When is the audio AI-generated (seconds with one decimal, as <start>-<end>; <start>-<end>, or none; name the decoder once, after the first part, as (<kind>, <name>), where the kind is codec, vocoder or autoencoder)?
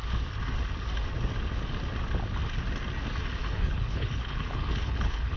3.4-5.4 (codec, HILCodec)